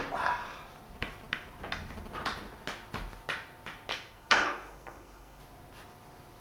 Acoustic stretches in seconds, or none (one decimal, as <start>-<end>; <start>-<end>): 0.0-3.9; 5.4-6.4